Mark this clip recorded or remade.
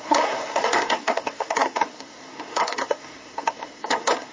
remade